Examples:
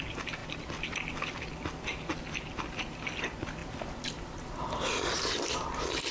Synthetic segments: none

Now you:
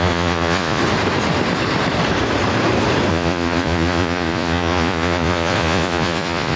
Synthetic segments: 0.0-0.8; 3.1-6.6

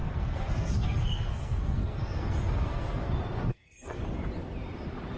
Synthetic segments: 0.0-3.1; 3.5-4.0

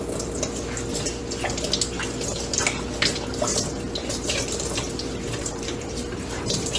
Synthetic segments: 3.5-6.8